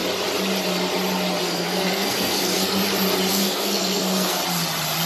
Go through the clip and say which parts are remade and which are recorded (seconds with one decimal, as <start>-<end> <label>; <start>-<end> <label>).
0.0-1.4 recorded; 1.4-2.8 remade; 2.8-3.3 recorded; 3.3-4.4 remade; 4.4-5.1 recorded